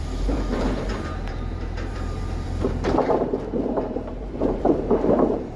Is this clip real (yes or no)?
no